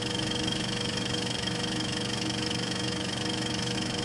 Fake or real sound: fake